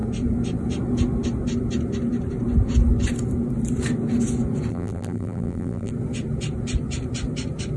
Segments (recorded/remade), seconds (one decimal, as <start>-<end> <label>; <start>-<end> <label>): 0.0-4.7 recorded; 4.7-5.9 remade; 5.9-7.8 recorded

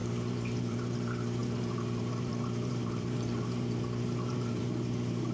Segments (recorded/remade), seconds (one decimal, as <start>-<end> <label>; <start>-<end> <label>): 0.0-5.3 remade

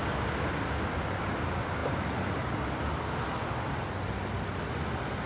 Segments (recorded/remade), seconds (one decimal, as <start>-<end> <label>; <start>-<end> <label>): 0.0-5.3 recorded

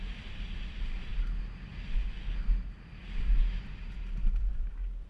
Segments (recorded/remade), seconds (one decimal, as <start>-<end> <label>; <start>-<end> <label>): 0.0-1.1 remade; 1.1-4.2 recorded; 4.2-5.1 remade

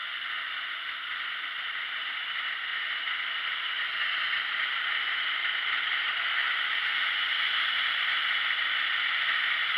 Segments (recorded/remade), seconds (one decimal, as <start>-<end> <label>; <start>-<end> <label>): 0.0-6.4 recorded; 6.4-7.3 remade; 7.3-9.8 recorded

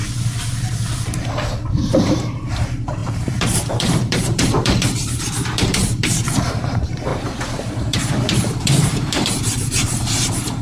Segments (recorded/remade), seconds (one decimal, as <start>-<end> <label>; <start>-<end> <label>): 0.0-2.0 recorded; 2.0-10.6 remade

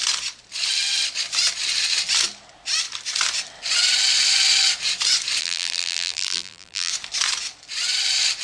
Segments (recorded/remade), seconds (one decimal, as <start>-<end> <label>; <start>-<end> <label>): 0.0-5.4 recorded; 5.4-6.9 remade; 6.9-8.4 recorded